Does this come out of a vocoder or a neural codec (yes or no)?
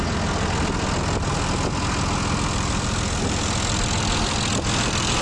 no